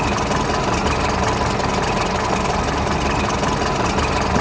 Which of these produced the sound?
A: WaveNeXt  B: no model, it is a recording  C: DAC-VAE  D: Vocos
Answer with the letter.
B